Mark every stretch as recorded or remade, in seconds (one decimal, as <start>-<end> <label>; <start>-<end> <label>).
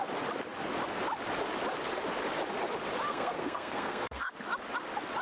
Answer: 0.0-3.1 recorded; 3.1-4.3 remade; 4.3-5.2 recorded